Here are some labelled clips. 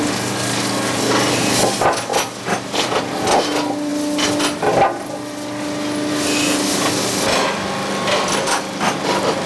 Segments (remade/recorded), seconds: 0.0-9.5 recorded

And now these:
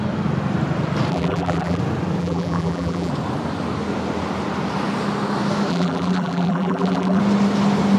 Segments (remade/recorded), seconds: 0.0-1.1 recorded; 1.1-1.8 remade; 1.8-2.2 recorded; 2.2-3.1 remade; 3.1-5.7 recorded; 5.7-7.2 remade; 7.2-8.0 recorded

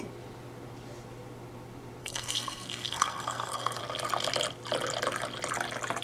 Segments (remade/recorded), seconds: 0.0-2.0 recorded; 2.0-3.8 remade; 3.8-6.0 recorded